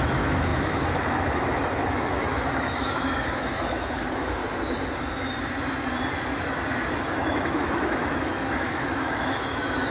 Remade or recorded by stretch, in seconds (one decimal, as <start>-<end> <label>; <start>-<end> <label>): 0.0-4.4 remade; 4.4-7.0 recorded; 7.0-9.9 remade